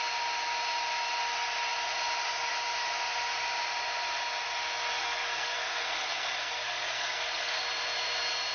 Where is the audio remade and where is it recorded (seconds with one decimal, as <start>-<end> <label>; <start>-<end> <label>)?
0.0-5.0 recorded; 5.0-7.6 remade; 7.6-8.5 recorded